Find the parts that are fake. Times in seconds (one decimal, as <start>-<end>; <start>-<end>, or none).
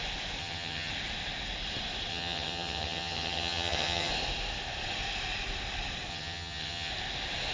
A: 0.4-0.9; 2.1-4.1; 6.1-6.9